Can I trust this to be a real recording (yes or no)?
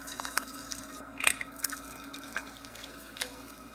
no